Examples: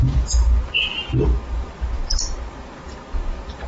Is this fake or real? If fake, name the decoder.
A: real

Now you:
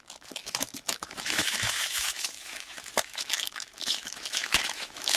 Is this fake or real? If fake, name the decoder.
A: fake, autoencoder, DAC-VAE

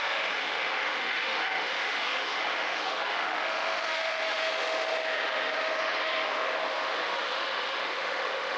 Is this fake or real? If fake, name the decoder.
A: fake, autoencoder, DAC-VAE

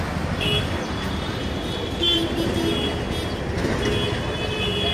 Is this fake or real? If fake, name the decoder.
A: real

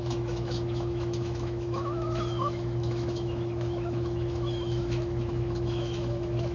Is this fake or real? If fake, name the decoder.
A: fake, autoencoder, DAC-VAE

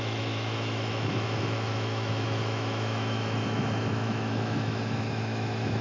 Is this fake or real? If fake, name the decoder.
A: fake, autoencoder, DAC-VAE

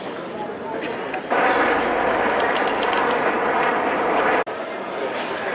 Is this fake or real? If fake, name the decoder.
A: real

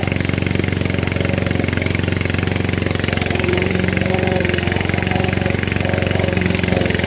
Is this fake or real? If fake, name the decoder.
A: real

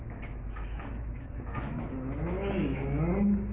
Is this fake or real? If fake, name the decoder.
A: fake, autoencoder, DAC-VAE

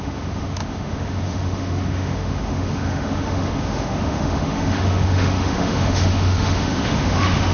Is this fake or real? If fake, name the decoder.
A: fake, autoencoder, DAC-VAE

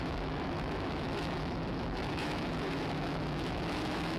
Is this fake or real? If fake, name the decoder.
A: fake, autoencoder, DAC-VAE